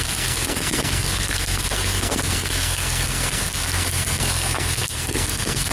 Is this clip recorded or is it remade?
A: remade